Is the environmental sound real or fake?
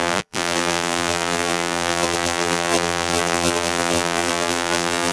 fake